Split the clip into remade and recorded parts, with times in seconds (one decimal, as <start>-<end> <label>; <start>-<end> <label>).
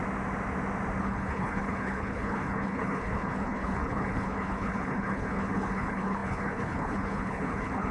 0.0-1.0 recorded; 1.0-7.9 remade